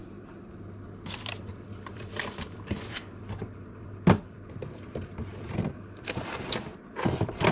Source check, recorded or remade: remade